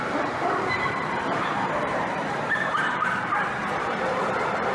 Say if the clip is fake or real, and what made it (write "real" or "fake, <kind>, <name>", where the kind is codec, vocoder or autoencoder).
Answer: fake, vocoder, BigVGAN v2